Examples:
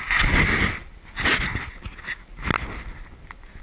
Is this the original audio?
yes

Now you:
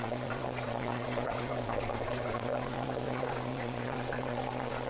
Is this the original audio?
no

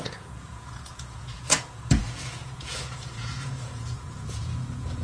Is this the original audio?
no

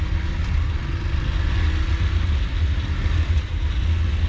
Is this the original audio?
yes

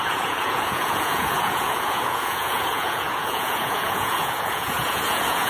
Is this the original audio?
no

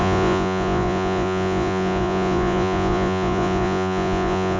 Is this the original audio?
no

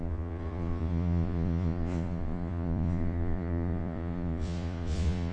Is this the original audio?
no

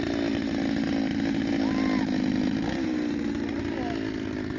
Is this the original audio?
yes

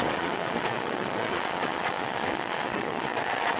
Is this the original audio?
no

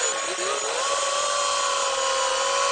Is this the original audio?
yes